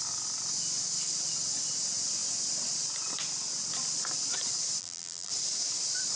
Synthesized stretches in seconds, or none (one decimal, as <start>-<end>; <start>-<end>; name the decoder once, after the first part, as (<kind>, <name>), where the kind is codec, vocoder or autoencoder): 4.8-5.3 (vocoder, BigVGAN v2)